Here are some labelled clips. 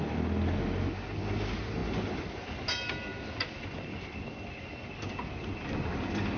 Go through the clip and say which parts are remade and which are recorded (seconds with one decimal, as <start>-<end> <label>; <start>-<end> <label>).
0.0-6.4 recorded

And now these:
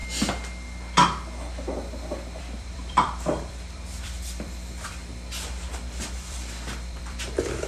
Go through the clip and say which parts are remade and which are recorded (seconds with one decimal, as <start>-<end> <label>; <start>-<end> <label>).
0.0-2.4 recorded; 2.4-5.0 remade; 5.0-6.0 recorded; 6.0-7.7 remade

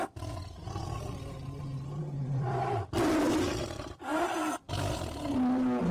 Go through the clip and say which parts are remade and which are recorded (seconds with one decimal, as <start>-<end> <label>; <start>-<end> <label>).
0.0-2.0 recorded; 2.0-2.6 remade; 2.6-4.1 recorded; 4.1-4.7 remade; 4.7-5.9 recorded